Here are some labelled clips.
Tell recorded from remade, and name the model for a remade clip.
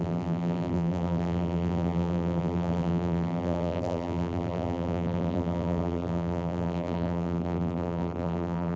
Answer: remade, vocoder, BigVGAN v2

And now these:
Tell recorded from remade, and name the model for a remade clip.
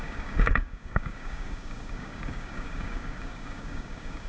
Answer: remade, codec, DAC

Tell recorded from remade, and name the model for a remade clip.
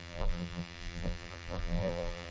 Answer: remade, vocoder, BigVGAN v2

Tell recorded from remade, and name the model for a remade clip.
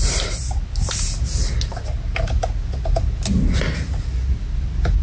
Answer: recorded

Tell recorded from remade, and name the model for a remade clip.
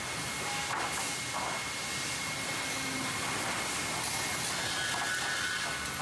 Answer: recorded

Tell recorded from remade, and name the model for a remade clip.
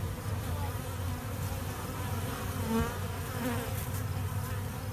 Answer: recorded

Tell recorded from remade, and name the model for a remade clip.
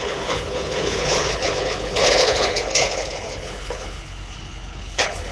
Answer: remade, codec, HILCodec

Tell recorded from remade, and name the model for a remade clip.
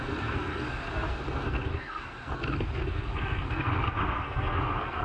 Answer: remade, codec, SNAC